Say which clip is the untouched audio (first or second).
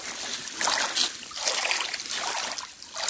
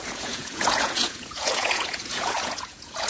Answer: first